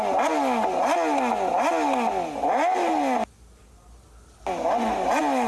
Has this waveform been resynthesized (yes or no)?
no